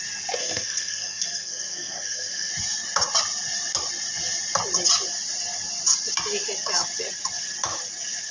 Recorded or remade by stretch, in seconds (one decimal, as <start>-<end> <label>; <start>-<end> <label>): 0.0-0.4 recorded; 0.4-2.5 remade; 2.5-8.3 recorded